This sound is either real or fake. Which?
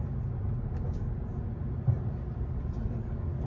real